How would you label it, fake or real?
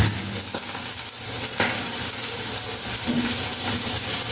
real